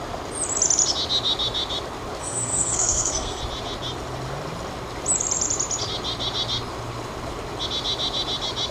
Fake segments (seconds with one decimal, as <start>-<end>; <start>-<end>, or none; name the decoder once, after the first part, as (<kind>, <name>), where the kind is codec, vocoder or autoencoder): 2.2-3.4 (codec, SNAC)